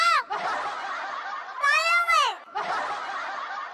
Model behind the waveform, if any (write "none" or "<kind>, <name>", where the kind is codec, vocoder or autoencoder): none